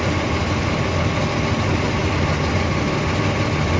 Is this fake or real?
real